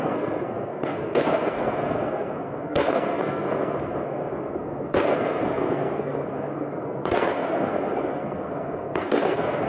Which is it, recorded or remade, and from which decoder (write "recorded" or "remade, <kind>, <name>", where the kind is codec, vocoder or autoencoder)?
remade, codec, SNAC